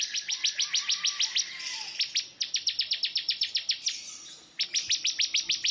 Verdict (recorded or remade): remade